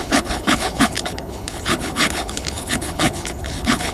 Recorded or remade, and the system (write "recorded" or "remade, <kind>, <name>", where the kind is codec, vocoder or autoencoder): remade, codec, HILCodec